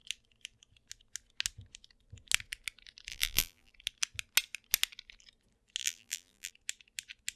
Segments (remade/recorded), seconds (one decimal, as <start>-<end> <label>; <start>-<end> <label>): 0.0-3.1 recorded; 3.1-3.7 remade; 3.7-5.8 recorded; 5.8-6.5 remade; 6.5-7.4 recorded